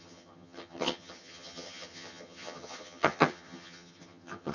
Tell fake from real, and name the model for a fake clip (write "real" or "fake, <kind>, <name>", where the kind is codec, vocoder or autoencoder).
fake, vocoder, HiFi-GAN